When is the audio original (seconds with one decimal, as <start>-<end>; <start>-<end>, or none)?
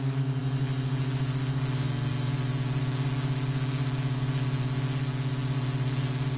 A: 0.0-6.4